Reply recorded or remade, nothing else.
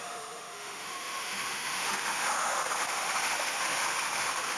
remade